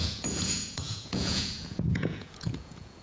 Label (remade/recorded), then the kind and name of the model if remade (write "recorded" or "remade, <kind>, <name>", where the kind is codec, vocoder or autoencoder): remade, vocoder, Vocos